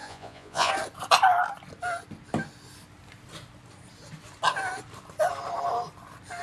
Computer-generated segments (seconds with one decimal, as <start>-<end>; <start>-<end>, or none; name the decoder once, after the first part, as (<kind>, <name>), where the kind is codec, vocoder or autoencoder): 0.0-0.7 (vocoder, Vocos)